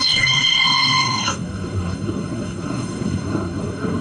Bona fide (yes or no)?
no